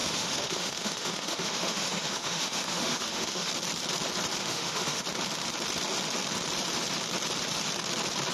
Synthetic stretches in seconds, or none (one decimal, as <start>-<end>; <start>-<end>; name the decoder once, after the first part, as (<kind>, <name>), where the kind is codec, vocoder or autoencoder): 0.0-3.5 (autoencoder, DAC-VAE); 4.4-5.0